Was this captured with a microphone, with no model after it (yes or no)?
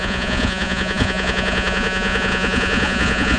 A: no